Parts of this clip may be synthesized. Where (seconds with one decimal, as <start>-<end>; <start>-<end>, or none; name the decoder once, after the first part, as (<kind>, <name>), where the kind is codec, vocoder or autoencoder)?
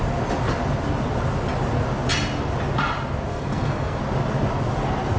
3.3-4.0 (codec, SNAC)